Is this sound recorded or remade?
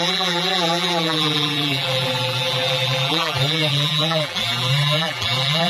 remade